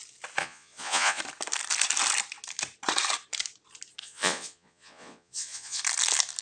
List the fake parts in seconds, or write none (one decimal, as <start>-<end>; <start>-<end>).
0.4-1.2; 4.0-5.8